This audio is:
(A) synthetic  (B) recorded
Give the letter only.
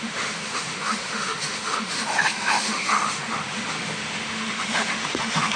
A